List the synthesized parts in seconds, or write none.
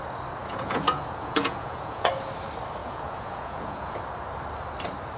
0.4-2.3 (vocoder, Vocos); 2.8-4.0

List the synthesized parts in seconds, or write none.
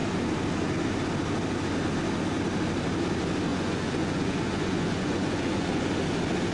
3.5-5.9 (vocoder, Vocos)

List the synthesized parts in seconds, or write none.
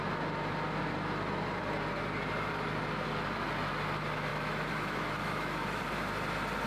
4.3-5.8 (autoencoder, DAC-VAE)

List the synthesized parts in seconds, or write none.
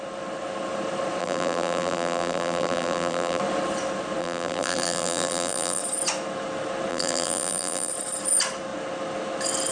1.2-3.4 (vocoder, BigVGAN v2); 4.2-5.8; 6.9-7.9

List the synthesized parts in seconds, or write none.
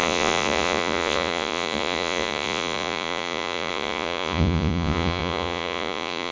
0.0-6.3 (vocoder, Vocos)